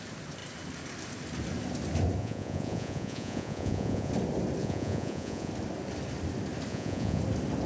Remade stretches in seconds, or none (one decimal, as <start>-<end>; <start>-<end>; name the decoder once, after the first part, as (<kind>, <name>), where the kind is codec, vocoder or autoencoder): 2.2-4.1 (vocoder, Vocos); 4.6-5.5; 6.7-7.2